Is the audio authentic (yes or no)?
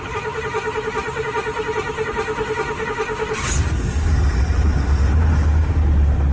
yes